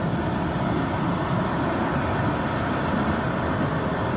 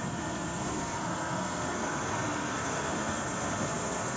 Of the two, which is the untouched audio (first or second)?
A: first